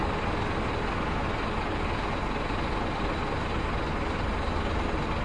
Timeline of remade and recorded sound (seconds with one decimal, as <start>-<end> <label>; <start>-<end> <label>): 0.0-5.2 recorded